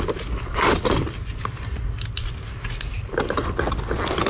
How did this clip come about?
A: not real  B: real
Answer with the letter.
B